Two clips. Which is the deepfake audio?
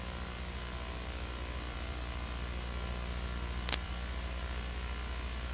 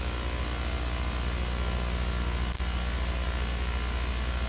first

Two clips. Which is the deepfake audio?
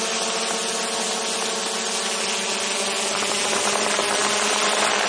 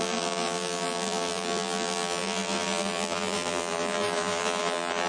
second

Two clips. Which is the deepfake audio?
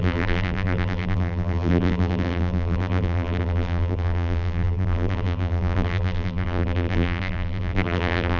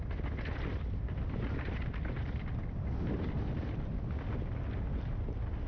first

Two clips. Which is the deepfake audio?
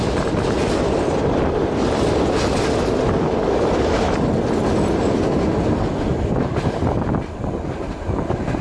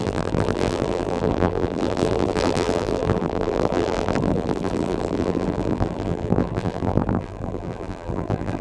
second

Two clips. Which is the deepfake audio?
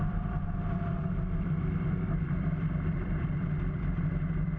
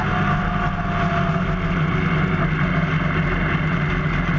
first